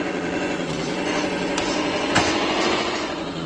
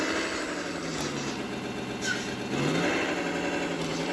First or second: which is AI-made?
first